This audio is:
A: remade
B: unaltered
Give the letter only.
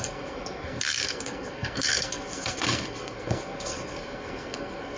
A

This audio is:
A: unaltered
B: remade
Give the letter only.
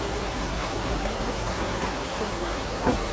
B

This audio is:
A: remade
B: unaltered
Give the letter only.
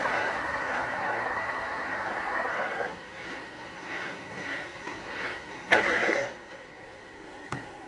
A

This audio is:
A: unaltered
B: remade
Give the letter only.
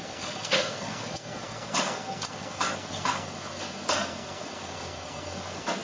B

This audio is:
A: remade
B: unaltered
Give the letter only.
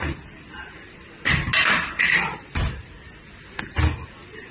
B